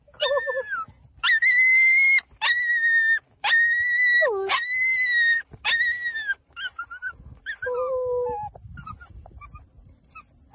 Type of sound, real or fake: real